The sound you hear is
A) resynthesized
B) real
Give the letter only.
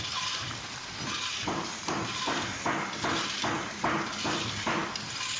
A